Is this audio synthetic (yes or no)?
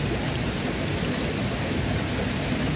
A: no